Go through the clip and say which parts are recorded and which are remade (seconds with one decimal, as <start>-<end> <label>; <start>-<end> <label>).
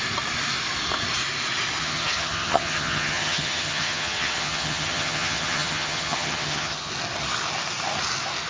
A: 0.0-1.8 recorded; 1.8-6.9 remade; 6.9-8.5 recorded